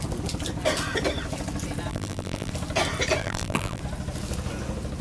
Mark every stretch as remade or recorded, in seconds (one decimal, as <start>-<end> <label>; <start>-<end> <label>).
0.0-1.9 recorded; 1.9-2.5 remade; 2.5-3.2 recorded; 3.2-3.8 remade; 3.8-5.0 recorded